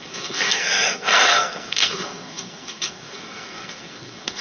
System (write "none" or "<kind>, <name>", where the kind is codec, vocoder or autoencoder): codec, SNAC